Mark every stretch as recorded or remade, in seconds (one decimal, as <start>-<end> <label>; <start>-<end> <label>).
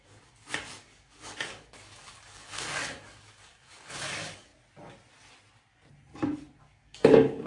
0.0-4.5 remade; 4.5-6.6 recorded; 6.6-7.5 remade